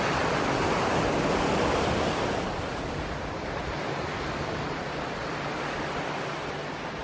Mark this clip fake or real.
real